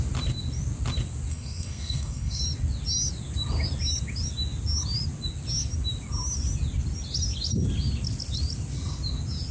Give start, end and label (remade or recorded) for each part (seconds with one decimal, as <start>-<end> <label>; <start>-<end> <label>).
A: 0.0-1.3 recorded; 1.3-2.4 remade; 2.4-9.5 recorded

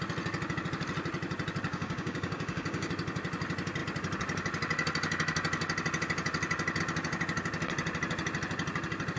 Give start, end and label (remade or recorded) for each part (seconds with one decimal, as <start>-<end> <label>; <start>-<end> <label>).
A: 0.0-1.7 recorded; 1.7-2.9 remade; 2.9-9.2 recorded